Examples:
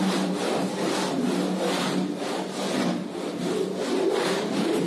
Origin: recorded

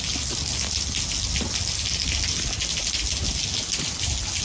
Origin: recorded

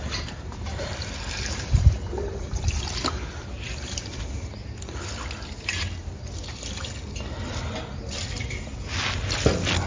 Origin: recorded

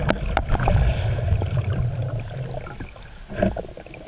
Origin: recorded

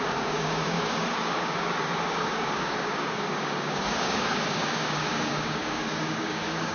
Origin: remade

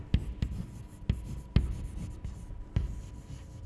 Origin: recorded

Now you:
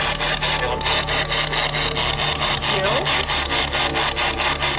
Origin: recorded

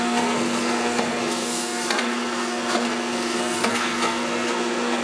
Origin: remade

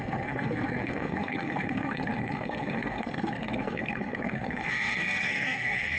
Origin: remade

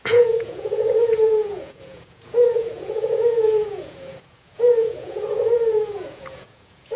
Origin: remade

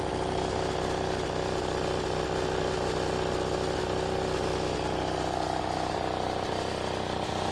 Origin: recorded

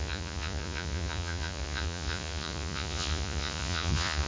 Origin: remade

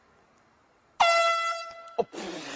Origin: recorded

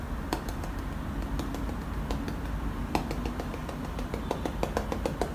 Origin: recorded